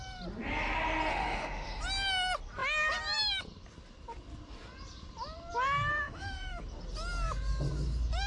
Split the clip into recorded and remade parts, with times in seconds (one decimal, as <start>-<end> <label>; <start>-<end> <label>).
0.0-1.1 recorded; 1.1-1.8 remade; 1.8-5.9 recorded; 5.9-6.6 remade; 6.6-8.3 recorded